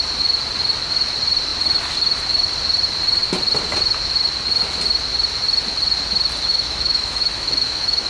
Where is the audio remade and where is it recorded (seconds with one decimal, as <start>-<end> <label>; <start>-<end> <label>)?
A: 0.0-6.5 recorded; 6.5-8.1 remade